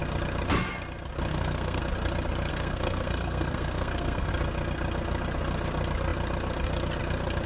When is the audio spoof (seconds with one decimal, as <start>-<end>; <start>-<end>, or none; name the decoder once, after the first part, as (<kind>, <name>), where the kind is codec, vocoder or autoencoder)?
1.3-1.8 (codec, SNAC); 2.5-4.3